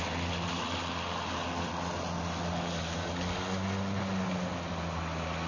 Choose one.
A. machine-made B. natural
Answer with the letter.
B